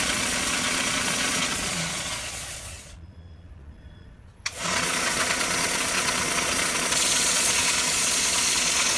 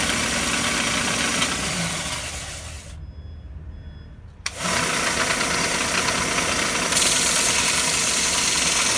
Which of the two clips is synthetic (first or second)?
first